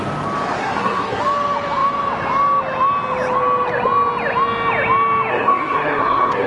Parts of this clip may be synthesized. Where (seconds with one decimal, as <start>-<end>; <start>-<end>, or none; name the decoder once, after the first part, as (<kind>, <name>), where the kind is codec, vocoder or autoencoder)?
0.6-1.2 (codec, SNAC); 5.3-6.5